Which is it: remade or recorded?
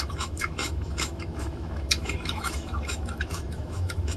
remade